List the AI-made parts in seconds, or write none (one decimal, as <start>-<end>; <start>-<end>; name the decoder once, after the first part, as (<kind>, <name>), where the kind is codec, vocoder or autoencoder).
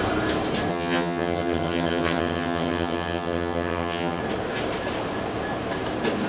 0.7-4.2 (vocoder, HiFi-GAN)